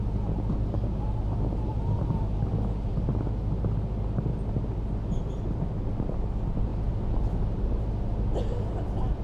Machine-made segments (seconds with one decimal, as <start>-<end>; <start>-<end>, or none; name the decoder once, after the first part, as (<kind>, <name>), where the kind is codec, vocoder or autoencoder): 1.7-2.5 (vocoder, BigVGAN v2)